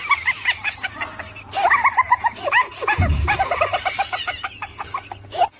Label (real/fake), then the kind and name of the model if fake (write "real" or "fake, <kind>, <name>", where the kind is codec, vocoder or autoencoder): real